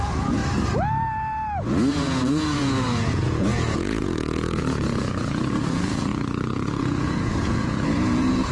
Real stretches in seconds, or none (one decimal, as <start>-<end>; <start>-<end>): 0.4-1.9